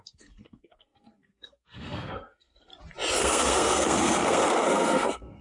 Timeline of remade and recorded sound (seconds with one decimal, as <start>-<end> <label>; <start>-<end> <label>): 0.0-2.7 remade; 2.7-3.2 recorded; 3.2-5.4 remade

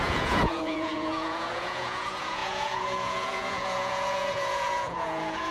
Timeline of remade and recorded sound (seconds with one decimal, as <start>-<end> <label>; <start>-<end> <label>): 0.0-5.5 remade

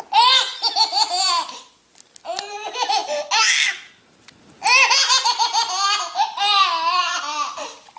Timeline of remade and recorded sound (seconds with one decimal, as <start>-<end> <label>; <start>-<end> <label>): 0.0-8.0 recorded

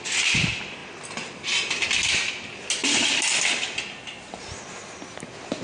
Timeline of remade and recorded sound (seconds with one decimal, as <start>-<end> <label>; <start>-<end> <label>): 0.0-5.6 recorded